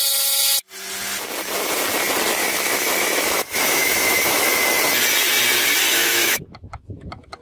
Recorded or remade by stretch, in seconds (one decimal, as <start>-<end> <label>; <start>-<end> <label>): 0.0-2.4 recorded; 2.4-4.5 remade; 4.5-5.9 recorded; 5.9-7.4 remade